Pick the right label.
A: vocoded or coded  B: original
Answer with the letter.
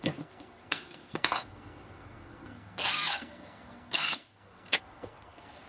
A